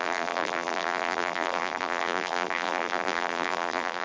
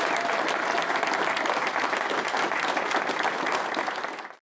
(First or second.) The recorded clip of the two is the second